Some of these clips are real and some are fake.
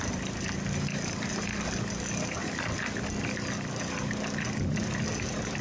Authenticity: real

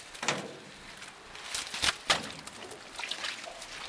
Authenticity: real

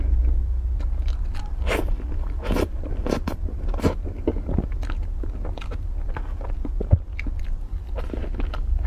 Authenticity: real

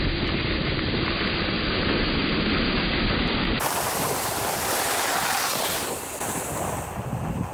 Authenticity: fake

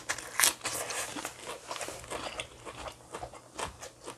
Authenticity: real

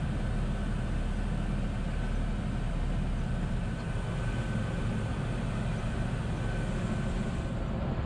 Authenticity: real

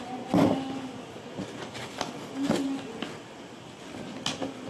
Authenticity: real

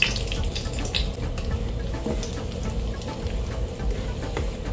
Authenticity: real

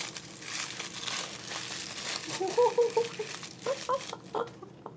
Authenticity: real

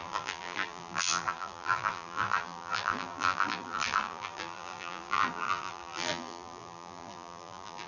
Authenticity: fake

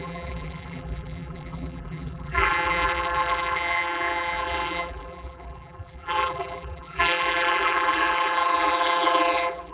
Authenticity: fake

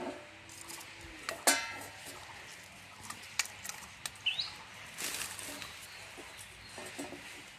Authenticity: real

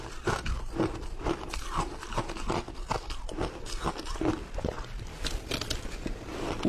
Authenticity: real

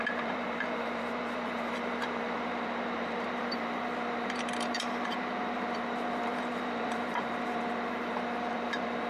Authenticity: fake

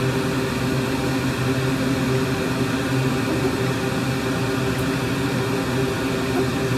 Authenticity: real